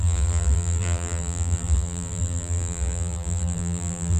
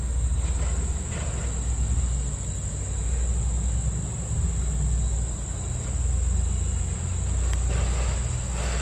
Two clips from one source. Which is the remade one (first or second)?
first